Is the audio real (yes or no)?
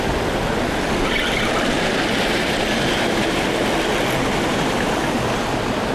yes